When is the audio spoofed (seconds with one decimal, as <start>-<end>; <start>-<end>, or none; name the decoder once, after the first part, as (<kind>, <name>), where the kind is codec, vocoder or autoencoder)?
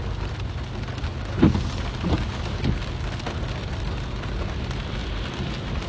none